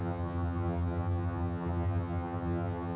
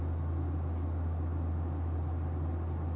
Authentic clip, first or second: second